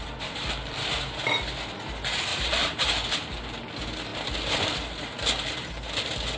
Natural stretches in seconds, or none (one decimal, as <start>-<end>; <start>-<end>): 0.0-2.3; 2.8-6.4